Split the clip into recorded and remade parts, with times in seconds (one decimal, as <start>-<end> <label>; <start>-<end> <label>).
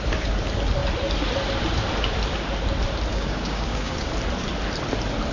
0.0-3.1 recorded; 3.1-4.1 remade; 4.1-5.3 recorded